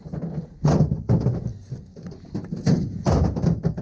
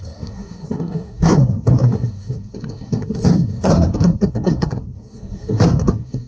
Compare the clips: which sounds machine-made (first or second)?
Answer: second